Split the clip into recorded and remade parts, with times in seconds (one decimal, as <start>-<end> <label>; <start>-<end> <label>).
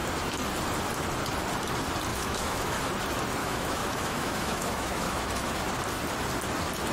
0.0-2.1 recorded; 2.1-2.8 remade; 2.8-3.4 recorded; 3.4-5.5 remade; 5.5-6.9 recorded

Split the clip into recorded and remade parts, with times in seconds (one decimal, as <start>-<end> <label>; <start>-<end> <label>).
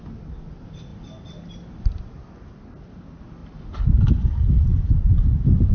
0.0-3.4 recorded; 3.4-4.3 remade; 4.3-4.7 recorded; 4.7-5.7 remade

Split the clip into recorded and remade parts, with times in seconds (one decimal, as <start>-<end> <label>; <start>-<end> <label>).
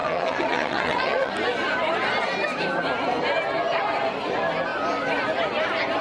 0.0-1.3 remade; 1.3-6.0 recorded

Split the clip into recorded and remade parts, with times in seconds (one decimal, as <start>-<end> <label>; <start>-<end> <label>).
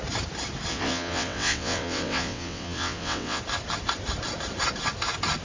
0.0-0.7 recorded; 0.7-3.4 remade; 3.4-5.4 recorded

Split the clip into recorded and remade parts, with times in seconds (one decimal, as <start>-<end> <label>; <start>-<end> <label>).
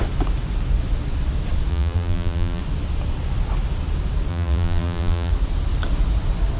0.0-1.7 recorded; 1.7-2.6 remade; 2.6-4.3 recorded; 4.3-5.3 remade; 5.3-6.6 recorded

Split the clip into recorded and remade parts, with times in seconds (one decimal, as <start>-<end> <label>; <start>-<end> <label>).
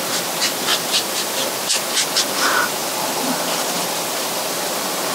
0.0-0.7 recorded; 0.7-1.3 remade; 1.3-2.8 recorded; 2.8-5.1 remade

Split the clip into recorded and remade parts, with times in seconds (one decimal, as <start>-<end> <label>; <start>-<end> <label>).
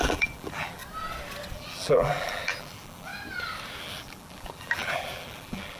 0.0-0.8 remade; 0.8-1.5 recorded; 1.5-3.1 remade; 3.1-3.8 recorded; 3.8-5.8 remade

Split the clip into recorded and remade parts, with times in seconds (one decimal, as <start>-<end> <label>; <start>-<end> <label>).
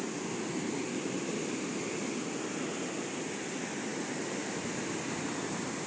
0.0-5.9 recorded